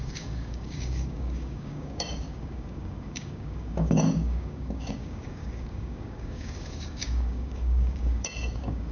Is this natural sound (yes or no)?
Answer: no